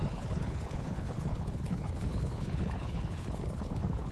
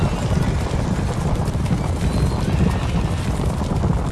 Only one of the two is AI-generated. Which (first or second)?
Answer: first